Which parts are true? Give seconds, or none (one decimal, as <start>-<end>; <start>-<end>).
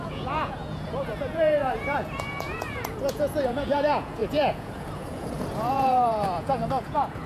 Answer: none